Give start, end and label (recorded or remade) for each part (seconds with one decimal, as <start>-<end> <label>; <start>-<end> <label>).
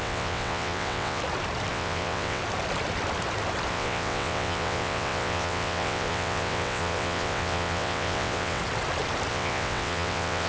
0.0-1.2 remade; 1.2-1.7 recorded; 1.7-2.4 remade; 2.4-3.7 recorded; 3.7-8.6 remade; 8.6-9.3 recorded; 9.3-10.5 remade